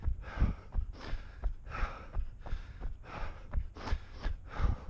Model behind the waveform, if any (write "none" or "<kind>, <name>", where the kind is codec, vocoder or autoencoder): none